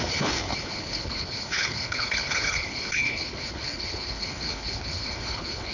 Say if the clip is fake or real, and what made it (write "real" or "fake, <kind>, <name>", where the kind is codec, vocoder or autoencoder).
fake, codec, HILCodec